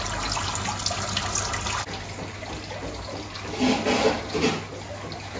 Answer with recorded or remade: recorded